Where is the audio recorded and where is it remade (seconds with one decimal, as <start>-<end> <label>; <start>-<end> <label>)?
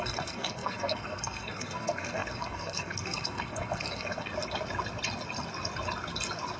0.0-4.3 remade; 4.3-6.6 recorded